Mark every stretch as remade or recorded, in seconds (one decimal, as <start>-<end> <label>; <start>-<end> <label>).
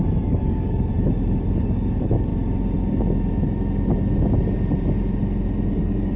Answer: 0.0-0.9 remade; 0.9-1.6 recorded; 1.6-2.3 remade; 2.3-5.7 recorded; 5.7-6.2 remade